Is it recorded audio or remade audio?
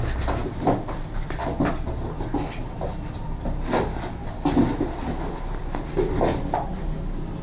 recorded